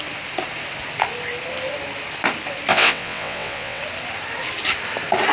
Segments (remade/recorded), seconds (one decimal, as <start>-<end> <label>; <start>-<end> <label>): 0.0-2.7 recorded; 2.7-3.8 remade; 3.8-5.3 recorded